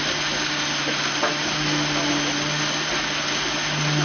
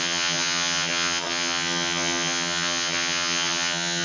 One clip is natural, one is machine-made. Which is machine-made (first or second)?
second